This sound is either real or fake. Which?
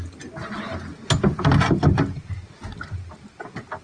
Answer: real